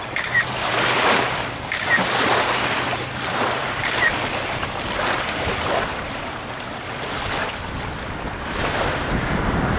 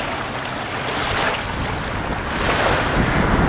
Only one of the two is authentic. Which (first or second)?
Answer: second